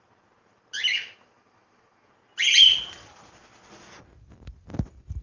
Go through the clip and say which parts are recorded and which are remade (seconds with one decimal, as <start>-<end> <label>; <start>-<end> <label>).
0.0-0.9 recorded; 0.9-2.1 remade; 2.1-5.2 recorded